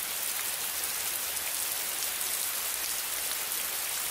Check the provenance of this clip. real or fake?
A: real